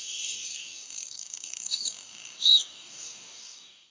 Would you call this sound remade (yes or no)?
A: yes